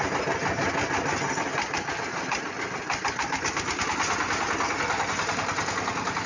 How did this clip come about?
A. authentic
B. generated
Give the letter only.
A